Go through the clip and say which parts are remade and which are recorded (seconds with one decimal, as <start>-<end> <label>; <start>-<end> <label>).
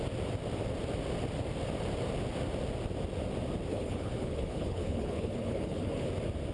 0.0-3.7 recorded; 3.7-6.1 remade; 6.1-6.5 recorded